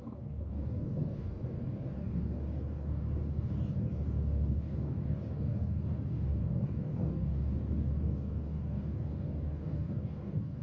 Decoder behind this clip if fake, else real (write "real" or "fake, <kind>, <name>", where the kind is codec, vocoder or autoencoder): fake, codec, DAC